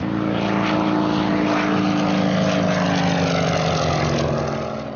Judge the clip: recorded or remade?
recorded